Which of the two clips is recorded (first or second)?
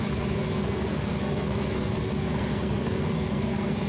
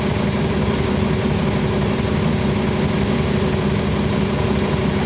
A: second